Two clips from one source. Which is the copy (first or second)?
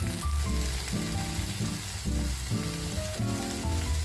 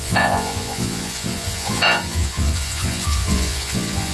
second